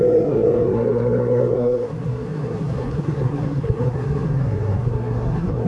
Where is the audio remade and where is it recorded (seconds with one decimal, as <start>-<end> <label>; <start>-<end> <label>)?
0.0-5.7 remade